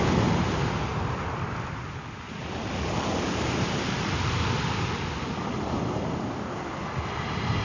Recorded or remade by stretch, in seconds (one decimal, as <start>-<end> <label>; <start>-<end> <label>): 0.0-7.6 recorded